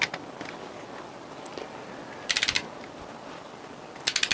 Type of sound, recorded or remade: recorded